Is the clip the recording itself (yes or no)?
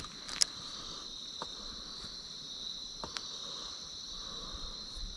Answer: yes